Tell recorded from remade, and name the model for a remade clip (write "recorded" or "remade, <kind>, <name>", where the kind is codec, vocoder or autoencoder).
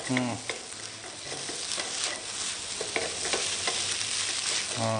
recorded